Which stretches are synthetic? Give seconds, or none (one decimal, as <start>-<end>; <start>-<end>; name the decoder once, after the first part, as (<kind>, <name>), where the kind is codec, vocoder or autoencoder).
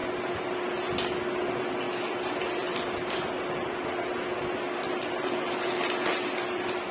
none